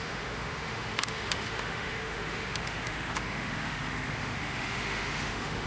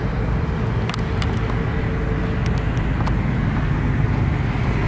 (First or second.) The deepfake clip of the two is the first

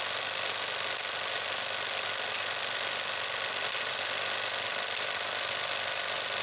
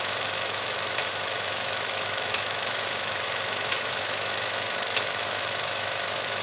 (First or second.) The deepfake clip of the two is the second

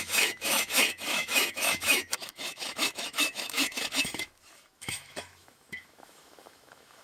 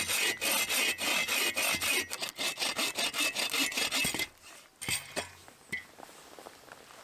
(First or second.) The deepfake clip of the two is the first